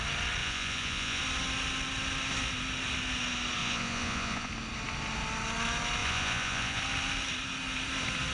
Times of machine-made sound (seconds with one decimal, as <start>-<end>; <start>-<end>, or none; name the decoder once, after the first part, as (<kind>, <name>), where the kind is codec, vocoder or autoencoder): 0.4-1.2 (vocoder, Vocos); 3.6-4.5; 6.0-6.8